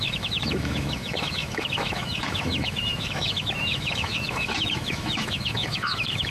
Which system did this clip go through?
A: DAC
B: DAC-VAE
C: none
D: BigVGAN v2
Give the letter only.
B